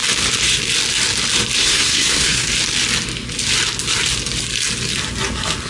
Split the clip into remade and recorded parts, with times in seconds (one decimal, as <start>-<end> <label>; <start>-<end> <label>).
0.0-1.6 recorded; 1.6-2.5 remade; 2.5-5.7 recorded